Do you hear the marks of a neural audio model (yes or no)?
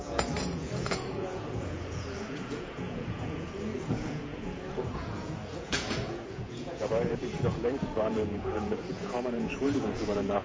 yes